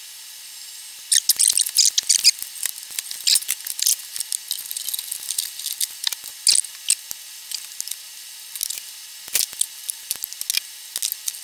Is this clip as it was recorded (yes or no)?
yes